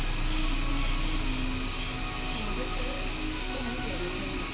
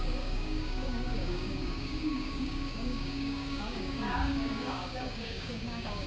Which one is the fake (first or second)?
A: second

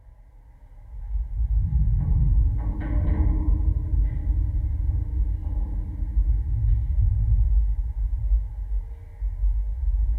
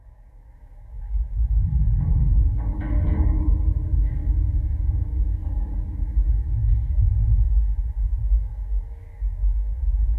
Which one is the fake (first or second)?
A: second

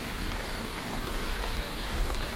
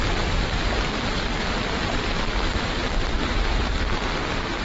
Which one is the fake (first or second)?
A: first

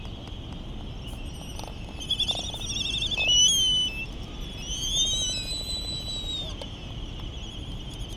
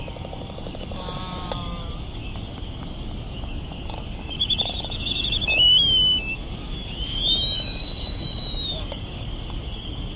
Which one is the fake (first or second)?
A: second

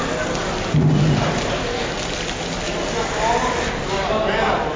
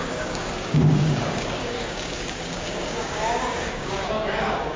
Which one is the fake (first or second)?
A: second